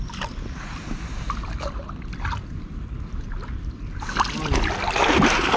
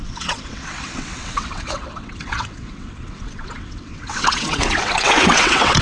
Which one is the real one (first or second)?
first